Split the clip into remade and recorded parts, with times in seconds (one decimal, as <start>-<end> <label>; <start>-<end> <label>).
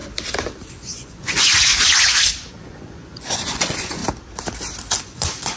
0.0-0.7 recorded; 0.7-1.7 remade; 1.7-2.5 recorded; 2.5-4.0 remade; 4.0-5.0 recorded; 5.0-5.6 remade